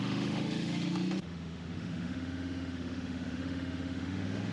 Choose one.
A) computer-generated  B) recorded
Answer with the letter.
A